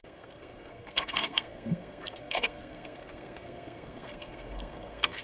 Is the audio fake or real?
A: fake